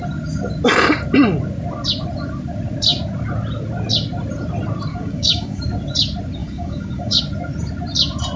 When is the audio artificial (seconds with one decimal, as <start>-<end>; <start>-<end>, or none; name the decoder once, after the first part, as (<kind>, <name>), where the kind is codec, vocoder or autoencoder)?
4.9-5.6 (codec, DAC); 6.4-7.2